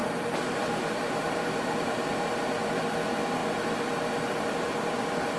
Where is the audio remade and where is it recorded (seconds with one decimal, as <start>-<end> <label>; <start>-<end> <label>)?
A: 0.0-2.4 remade; 2.4-5.4 recorded

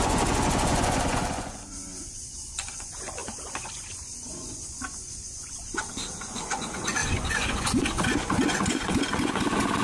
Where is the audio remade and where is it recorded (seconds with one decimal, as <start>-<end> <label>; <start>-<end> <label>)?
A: 0.0-9.8 remade

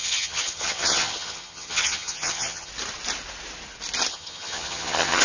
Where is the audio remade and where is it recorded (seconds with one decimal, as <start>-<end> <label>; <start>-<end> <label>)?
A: 0.0-2.7 remade; 2.7-4.1 recorded; 4.1-5.2 remade

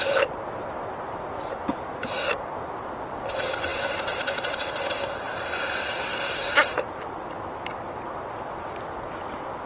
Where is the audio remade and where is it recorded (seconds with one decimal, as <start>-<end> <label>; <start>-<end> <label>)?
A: 0.0-9.7 recorded

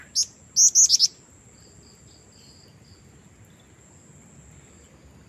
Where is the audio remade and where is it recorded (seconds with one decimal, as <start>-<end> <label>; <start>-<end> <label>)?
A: 0.0-5.3 recorded

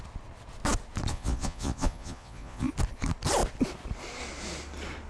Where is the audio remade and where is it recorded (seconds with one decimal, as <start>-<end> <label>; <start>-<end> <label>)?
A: 0.0-1.1 recorded; 1.1-2.7 remade; 2.7-5.1 recorded

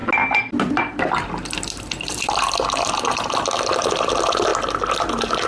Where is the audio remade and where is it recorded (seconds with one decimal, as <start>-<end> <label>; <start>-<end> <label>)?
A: 0.0-0.9 recorded; 0.9-5.5 remade